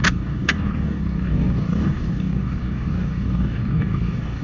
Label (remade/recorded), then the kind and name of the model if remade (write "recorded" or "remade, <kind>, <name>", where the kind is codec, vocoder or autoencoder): remade, codec, DAC